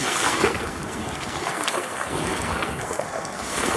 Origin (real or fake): fake